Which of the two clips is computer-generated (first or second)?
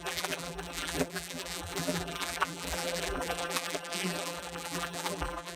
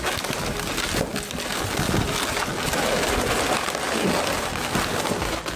first